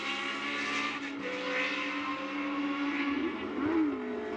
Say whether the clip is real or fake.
real